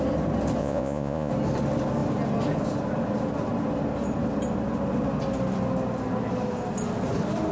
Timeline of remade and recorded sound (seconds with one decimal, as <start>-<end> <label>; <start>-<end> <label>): 0.0-0.6 recorded; 0.6-1.3 remade; 1.3-7.5 recorded